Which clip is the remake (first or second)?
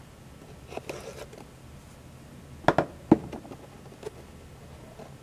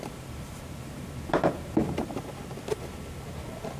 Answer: second